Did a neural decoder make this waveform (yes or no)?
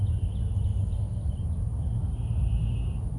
no